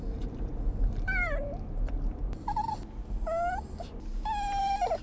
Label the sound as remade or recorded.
recorded